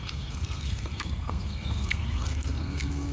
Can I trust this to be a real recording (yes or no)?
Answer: no